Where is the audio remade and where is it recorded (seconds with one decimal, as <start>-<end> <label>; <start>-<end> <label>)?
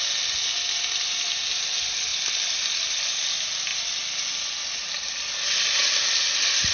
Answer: 0.0-6.7 recorded